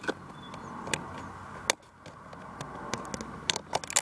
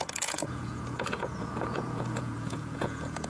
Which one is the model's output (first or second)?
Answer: second